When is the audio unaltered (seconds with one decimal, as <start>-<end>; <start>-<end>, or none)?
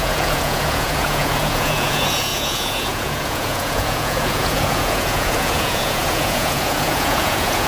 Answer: none